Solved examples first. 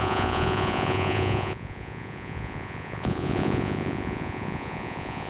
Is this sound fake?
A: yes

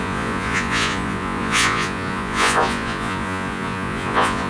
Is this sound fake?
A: yes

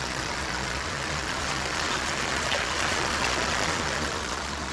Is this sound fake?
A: yes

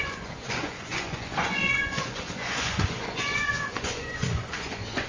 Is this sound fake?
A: yes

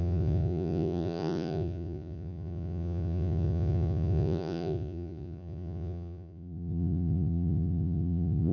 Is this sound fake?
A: yes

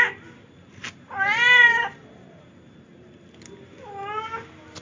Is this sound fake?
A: no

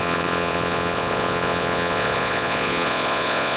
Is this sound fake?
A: yes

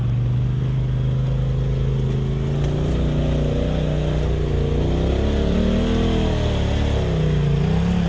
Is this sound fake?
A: no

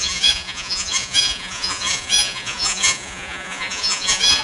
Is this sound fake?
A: yes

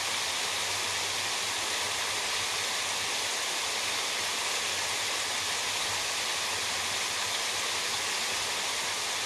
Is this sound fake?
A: no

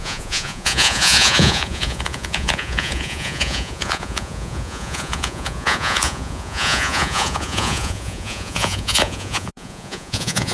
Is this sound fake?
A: yes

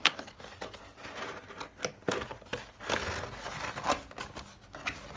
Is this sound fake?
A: no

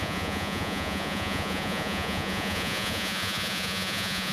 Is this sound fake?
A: yes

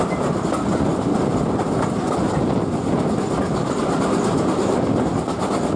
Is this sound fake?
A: no